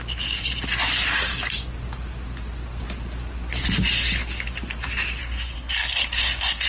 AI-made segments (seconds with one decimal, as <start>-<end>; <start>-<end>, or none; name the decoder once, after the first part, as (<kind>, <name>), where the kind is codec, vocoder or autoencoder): 5.2-6.7 (codec, SNAC)